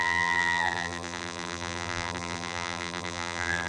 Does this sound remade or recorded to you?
remade